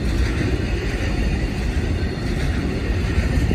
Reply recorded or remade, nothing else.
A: recorded